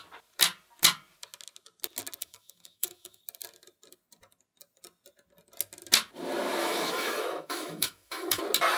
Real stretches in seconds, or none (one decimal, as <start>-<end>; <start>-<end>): 0.0-2.2; 3.2-6.6; 8.4-8.8